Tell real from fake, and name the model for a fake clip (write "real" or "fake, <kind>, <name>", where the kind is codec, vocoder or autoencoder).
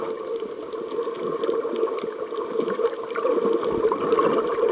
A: real